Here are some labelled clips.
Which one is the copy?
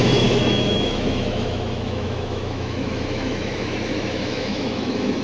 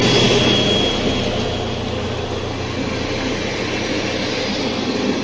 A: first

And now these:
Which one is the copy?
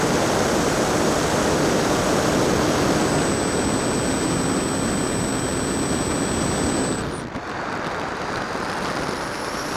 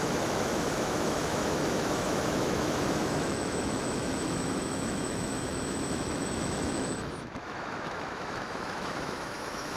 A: second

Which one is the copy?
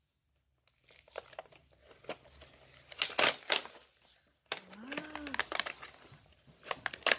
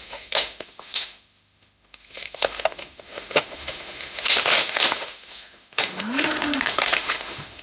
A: second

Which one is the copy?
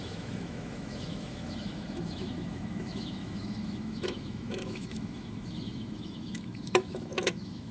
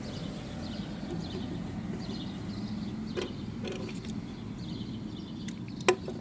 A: first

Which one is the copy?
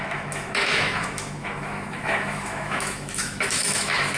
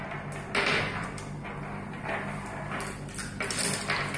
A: first